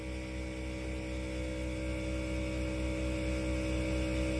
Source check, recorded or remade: recorded